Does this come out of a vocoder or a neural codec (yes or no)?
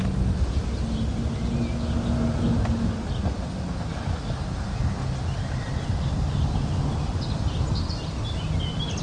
no